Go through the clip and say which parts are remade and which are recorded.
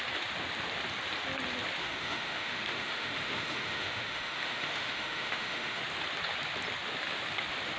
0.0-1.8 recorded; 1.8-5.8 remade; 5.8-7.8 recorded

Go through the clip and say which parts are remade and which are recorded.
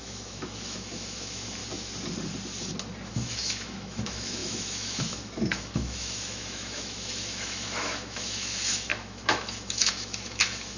0.0-1.6 remade; 1.6-3.1 recorded; 3.1-10.8 remade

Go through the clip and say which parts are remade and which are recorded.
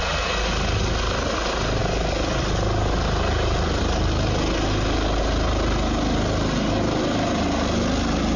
0.0-8.4 recorded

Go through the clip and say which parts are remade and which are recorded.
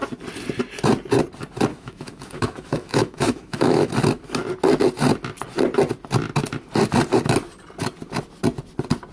0.0-1.7 recorded; 1.7-3.9 remade; 3.9-9.1 recorded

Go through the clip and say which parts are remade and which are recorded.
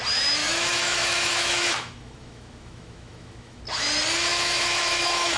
0.0-0.4 recorded; 0.4-3.6 remade; 3.6-4.3 recorded; 4.3-5.4 remade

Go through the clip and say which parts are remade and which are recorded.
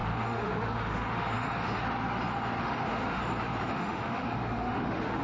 0.0-1.8 remade; 1.8-2.6 recorded; 2.6-3.2 remade; 3.2-3.7 recorded; 3.7-5.2 remade